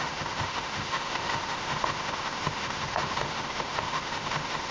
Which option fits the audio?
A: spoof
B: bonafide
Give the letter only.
A